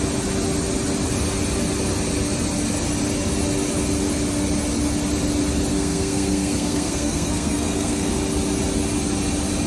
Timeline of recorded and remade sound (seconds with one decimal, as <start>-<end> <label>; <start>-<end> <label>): 0.0-5.7 recorded; 5.7-8.1 remade; 8.1-9.7 recorded